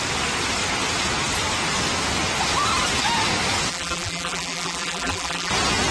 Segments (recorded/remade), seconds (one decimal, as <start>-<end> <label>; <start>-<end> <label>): 0.0-3.7 recorded; 3.7-5.5 remade; 5.5-5.9 recorded